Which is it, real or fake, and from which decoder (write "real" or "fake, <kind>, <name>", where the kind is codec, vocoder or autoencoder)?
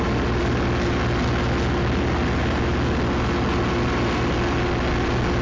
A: real